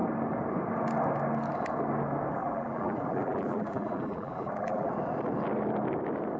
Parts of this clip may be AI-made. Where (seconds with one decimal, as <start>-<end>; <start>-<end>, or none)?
2.4-4.9